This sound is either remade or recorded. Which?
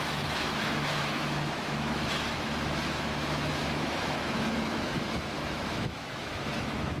remade